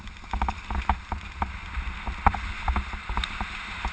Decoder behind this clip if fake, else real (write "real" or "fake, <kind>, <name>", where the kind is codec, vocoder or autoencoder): real